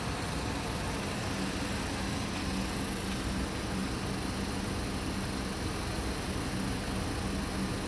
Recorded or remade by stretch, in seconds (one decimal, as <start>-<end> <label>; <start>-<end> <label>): 0.0-7.9 recorded